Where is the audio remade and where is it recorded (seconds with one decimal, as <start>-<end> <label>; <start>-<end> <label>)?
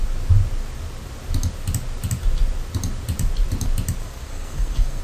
0.0-4.0 recorded; 4.0-5.0 remade